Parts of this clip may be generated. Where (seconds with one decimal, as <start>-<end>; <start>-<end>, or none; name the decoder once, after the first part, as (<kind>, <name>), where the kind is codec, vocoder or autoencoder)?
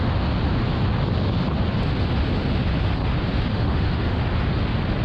3.5-4.2 (autoencoder, DAC-VAE)